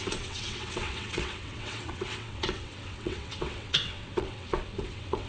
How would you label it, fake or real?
fake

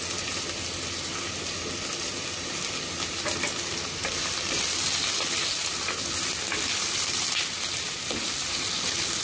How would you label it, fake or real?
real